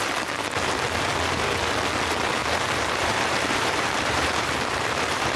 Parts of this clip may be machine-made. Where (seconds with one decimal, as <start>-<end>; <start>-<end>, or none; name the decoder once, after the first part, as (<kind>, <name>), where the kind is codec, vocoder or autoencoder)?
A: 2.4-5.4 (vocoder, BigVGAN v2)